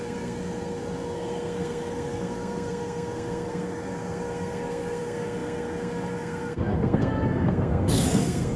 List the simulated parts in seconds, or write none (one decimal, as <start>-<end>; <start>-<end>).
0.0-8.6